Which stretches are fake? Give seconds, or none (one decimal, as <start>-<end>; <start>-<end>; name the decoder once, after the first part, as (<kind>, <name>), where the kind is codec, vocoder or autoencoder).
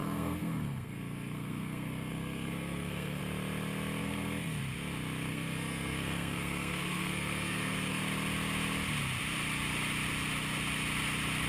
0.0-3.2 (codec, SNAC); 4.0-4.6; 5.3-8.0